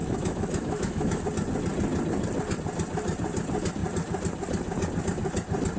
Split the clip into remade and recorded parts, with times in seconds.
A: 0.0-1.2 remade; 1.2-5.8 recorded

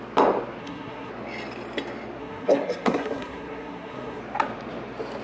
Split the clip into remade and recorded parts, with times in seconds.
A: 0.0-0.6 recorded; 0.6-1.1 remade; 1.1-2.2 recorded; 2.2-4.2 remade; 4.2-5.2 recorded

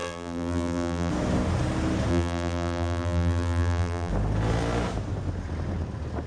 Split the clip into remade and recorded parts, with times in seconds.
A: 0.0-1.1 remade; 1.1-2.1 recorded; 2.1-4.1 remade; 4.1-6.3 recorded

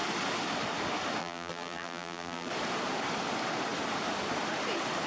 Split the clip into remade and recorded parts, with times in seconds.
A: 0.0-1.2 recorded; 1.2-2.5 remade; 2.5-5.1 recorded

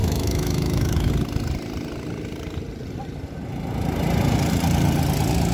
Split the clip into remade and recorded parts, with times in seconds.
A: 0.0-1.1 remade; 1.1-5.5 recorded

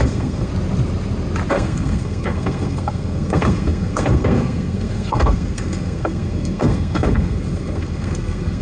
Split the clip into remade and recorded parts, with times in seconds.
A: 0.0-0.5 remade; 0.5-1.5 recorded; 1.5-8.6 remade